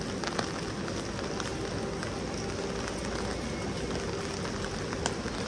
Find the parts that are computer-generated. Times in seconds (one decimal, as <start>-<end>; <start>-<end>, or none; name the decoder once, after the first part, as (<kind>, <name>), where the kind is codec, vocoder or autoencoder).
none